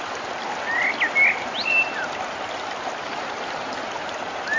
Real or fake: real